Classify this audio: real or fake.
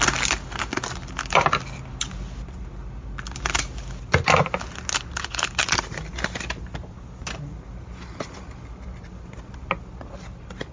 real